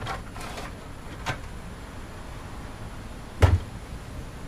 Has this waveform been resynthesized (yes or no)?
no